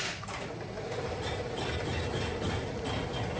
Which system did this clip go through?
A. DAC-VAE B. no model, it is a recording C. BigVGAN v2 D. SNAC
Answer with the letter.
B